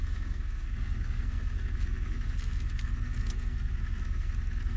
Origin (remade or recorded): remade